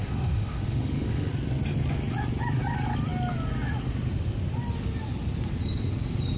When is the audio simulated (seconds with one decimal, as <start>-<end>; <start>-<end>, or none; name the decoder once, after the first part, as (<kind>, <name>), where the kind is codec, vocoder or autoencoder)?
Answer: 0.0-1.3 (autoencoder, DAC-VAE)